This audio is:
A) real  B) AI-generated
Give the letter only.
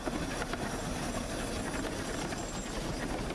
A